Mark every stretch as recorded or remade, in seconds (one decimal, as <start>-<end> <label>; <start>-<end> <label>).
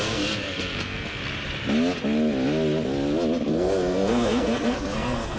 0.0-1.2 remade; 1.2-3.5 recorded; 3.5-5.4 remade